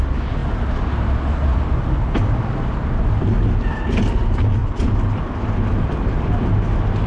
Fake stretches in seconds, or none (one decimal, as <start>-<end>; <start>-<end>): none